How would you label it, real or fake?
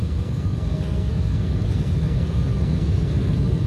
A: fake